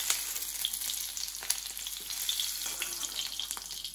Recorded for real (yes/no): yes